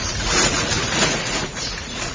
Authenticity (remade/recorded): remade